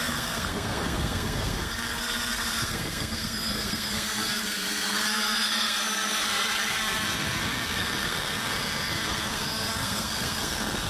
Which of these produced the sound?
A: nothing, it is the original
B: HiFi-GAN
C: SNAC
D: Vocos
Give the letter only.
C